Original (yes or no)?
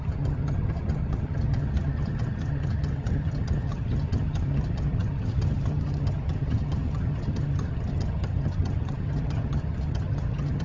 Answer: no